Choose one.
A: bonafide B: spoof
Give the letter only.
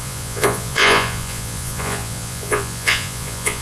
B